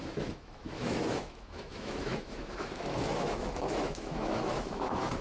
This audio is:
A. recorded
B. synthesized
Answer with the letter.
B